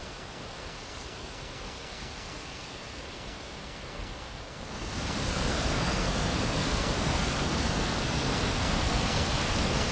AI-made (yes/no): yes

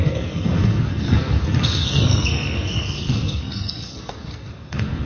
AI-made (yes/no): yes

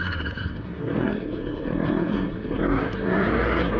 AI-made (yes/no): yes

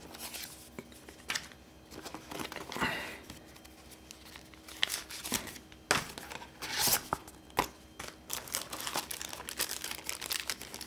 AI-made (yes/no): no